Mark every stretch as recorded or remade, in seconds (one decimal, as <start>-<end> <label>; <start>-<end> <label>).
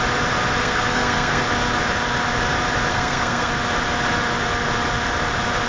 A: 0.0-0.6 recorded; 0.6-1.4 remade; 1.4-2.9 recorded; 2.9-3.5 remade; 3.5-5.7 recorded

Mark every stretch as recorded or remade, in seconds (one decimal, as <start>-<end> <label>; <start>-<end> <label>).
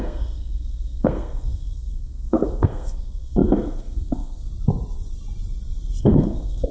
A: 0.0-4.5 remade; 4.5-6.0 recorded; 6.0-6.7 remade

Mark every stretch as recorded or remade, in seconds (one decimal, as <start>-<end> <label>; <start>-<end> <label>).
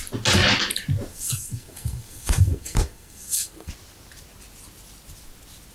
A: 0.0-1.1 recorded; 1.1-3.7 remade; 3.7-5.7 recorded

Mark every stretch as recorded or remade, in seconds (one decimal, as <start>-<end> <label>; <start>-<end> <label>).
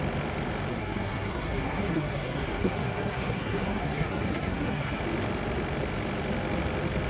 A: 0.0-0.7 recorded; 0.7-5.0 remade; 5.0-7.1 recorded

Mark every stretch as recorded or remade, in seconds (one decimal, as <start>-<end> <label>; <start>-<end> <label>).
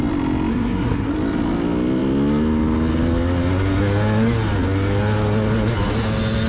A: 0.0-0.5 recorded; 0.5-1.1 remade; 1.1-6.5 recorded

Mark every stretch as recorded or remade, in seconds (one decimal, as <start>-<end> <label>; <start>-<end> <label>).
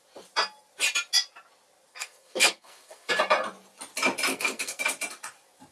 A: 0.0-1.9 recorded; 1.9-3.1 remade; 3.1-4.3 recorded; 4.3-4.8 remade; 4.8-5.7 recorded